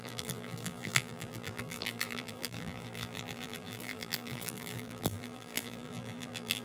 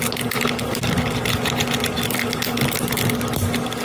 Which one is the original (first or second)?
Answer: second